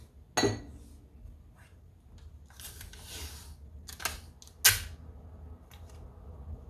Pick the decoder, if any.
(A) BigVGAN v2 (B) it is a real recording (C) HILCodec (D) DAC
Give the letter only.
B